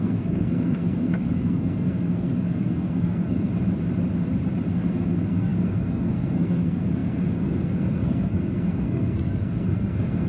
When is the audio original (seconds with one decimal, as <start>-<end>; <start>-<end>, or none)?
3.5-4.7